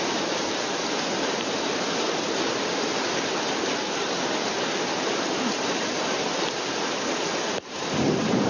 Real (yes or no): no